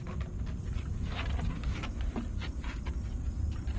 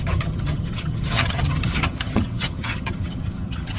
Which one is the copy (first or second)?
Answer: second